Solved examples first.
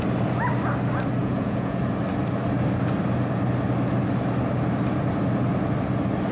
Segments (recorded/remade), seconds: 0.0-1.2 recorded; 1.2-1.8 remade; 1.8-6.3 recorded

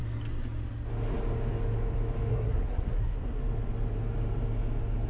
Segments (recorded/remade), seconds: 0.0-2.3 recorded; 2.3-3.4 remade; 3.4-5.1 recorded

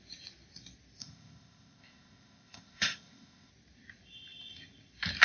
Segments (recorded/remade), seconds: 0.0-1.0 recorded; 1.0-3.5 remade; 3.5-5.2 recorded

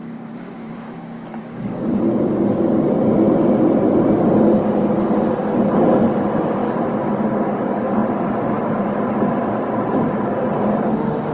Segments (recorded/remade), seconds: 0.0-2.0 remade; 2.0-11.3 recorded